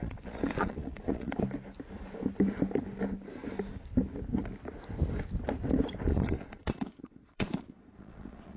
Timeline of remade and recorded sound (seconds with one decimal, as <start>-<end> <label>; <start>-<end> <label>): 0.0-1.4 remade; 1.4-6.1 recorded; 6.1-8.6 remade